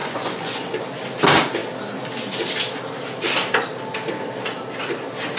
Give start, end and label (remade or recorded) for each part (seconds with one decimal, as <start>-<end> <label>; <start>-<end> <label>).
0.0-0.8 remade; 0.8-5.4 recorded